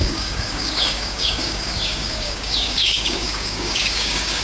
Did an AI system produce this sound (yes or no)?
yes